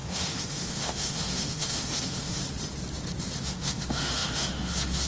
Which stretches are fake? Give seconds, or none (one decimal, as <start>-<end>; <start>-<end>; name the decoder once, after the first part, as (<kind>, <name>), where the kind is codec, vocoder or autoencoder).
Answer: 0.0-2.4 (autoencoder, DAC-VAE); 3.4-5.1

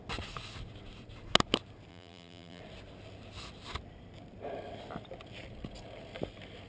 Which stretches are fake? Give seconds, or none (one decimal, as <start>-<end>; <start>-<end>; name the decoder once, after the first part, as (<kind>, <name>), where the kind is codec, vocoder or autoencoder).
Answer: 1.9-2.6 (vocoder, BigVGAN v2)

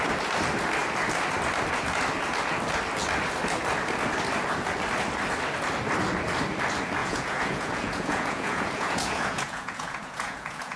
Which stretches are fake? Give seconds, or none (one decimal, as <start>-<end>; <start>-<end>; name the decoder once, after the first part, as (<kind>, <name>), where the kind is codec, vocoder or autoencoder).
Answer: 7.0-10.8 (vocoder, Vocos)

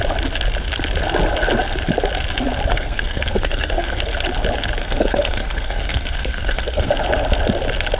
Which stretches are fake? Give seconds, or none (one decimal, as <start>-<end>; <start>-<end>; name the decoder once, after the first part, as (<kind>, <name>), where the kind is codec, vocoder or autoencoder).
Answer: 2.7-4.0 (codec, SNAC); 4.8-6.9

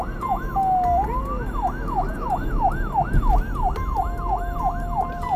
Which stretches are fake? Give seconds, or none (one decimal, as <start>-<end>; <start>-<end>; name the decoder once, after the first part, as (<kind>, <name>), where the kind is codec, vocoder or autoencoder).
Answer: none

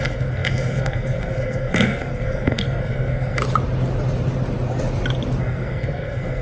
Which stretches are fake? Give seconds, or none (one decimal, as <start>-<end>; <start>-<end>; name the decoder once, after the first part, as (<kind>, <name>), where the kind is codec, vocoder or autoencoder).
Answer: 0.0-3.4 (codec, SNAC); 5.4-6.4

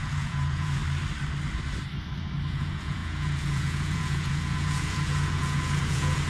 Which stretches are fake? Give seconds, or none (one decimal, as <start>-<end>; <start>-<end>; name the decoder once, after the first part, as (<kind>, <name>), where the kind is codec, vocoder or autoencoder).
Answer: 0.0-0.8 (vocoder, Vocos); 2.5-6.3